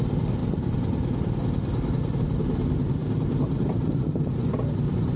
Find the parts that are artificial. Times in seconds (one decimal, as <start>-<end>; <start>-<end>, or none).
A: 0.0-0.4; 2.2-5.2